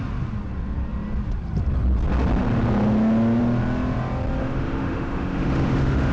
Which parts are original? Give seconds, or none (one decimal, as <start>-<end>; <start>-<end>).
0.0-4.4